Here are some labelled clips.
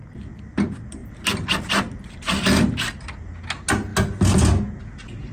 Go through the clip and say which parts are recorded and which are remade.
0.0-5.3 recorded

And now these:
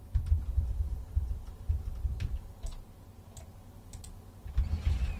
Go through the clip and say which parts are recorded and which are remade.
0.0-5.2 recorded

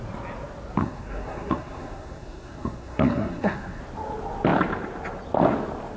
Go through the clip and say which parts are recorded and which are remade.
0.0-0.8 recorded; 0.8-3.8 remade; 3.8-6.0 recorded

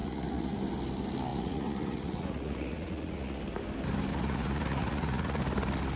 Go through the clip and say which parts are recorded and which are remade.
0.0-0.6 remade; 0.6-1.3 recorded; 1.3-3.4 remade; 3.4-4.1 recorded; 4.1-5.4 remade; 5.4-6.0 recorded

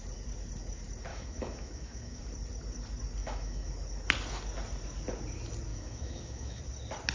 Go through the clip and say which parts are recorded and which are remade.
0.0-1.1 recorded; 1.1-2.2 remade; 2.2-3.2 recorded; 3.2-3.7 remade; 3.7-5.7 recorded; 5.7-6.6 remade; 6.6-7.1 recorded

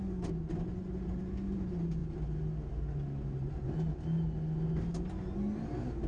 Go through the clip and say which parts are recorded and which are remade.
0.0-6.1 recorded

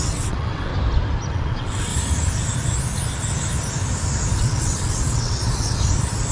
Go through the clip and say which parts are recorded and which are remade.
0.0-0.7 remade; 0.7-1.3 recorded; 1.3-1.9 remade; 1.9-4.4 recorded; 4.4-5.4 remade; 5.4-6.3 recorded

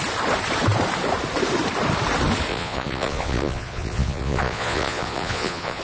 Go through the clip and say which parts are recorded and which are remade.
0.0-2.5 recorded; 2.5-5.8 remade